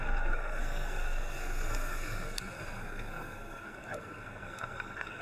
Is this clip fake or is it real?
fake